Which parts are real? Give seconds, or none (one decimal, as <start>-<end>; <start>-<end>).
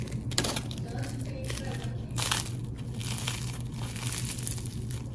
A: 0.0-5.1